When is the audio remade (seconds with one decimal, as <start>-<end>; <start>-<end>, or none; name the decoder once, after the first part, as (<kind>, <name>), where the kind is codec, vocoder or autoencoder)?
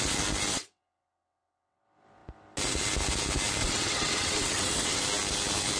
0.5-1.8 (vocoder, WaveNeXt); 3.6-5.0